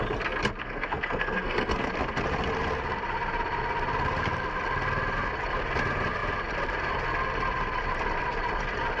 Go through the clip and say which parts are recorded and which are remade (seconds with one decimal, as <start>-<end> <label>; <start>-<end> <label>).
0.0-0.6 recorded; 0.6-1.9 remade; 1.9-9.0 recorded